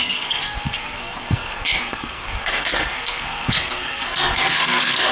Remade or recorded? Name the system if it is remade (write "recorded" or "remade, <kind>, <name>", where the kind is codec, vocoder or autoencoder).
remade, codec, SNAC